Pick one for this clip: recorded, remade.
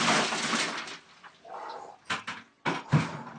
recorded